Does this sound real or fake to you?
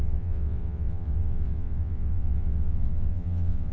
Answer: fake